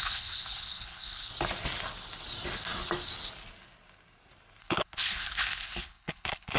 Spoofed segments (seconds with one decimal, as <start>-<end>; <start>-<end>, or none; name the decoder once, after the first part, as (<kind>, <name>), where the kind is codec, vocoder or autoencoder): 0.0-1.3 (codec, HILCodec); 4.6-6.6